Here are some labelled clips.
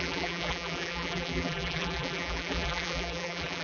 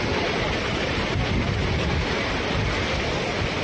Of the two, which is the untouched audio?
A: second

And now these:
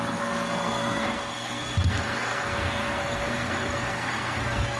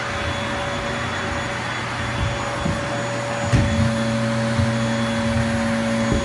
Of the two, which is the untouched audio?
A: second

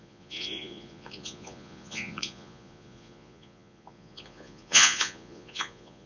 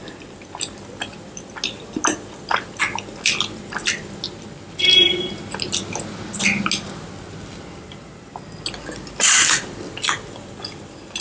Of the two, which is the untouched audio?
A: second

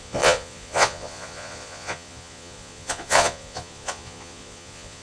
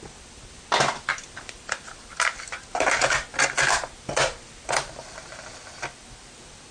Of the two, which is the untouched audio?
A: second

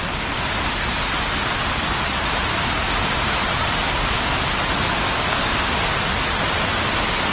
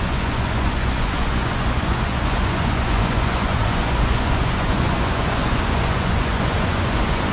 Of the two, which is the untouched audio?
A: first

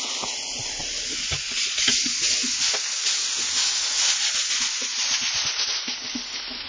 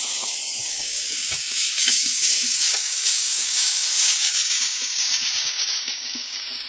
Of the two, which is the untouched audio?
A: first